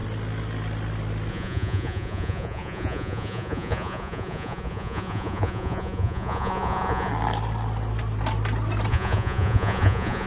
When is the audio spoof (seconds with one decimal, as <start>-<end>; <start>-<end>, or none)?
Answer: 1.3-7.1; 8.9-10.3